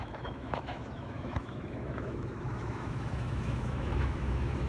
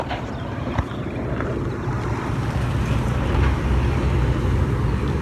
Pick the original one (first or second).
second